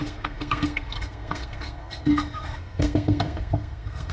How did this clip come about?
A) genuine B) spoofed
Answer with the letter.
B